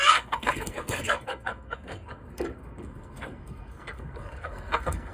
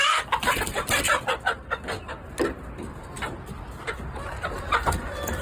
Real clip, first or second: second